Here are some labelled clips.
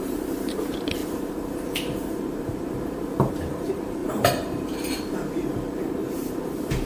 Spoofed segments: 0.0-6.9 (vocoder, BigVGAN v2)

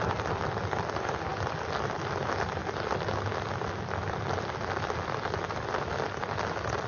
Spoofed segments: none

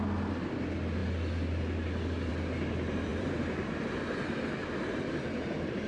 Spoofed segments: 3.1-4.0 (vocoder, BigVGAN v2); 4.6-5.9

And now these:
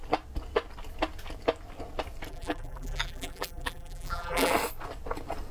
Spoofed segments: 2.3-4.5 (vocoder, BigVGAN v2)

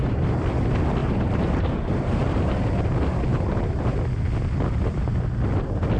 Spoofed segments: 1.0-2.5 (vocoder, BigVGAN v2); 3.3-3.8